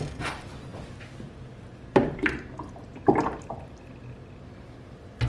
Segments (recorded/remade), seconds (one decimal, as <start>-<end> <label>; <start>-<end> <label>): 0.0-5.3 recorded